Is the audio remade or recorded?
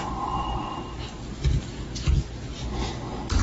recorded